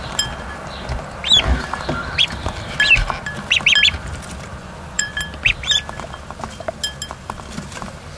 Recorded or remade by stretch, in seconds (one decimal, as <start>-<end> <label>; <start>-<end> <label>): 0.0-4.6 recorded; 4.6-5.1 remade; 5.1-8.2 recorded